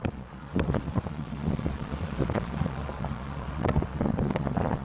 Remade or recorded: remade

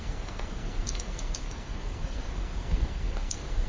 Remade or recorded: remade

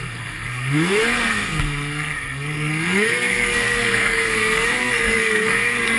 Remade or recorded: remade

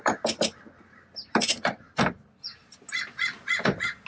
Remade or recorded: recorded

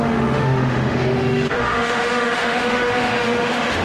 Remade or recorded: remade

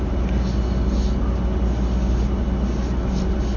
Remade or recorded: recorded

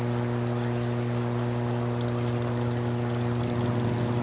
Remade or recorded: recorded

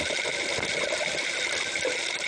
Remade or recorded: recorded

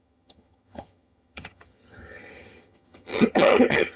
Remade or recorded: remade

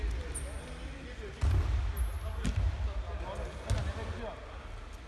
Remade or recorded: recorded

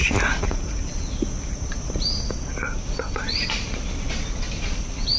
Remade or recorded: recorded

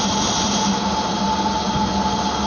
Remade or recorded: recorded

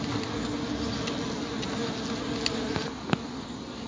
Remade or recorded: recorded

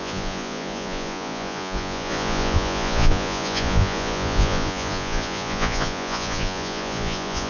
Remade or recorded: remade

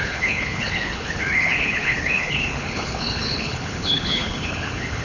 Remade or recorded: remade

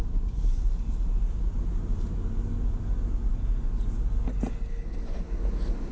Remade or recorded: recorded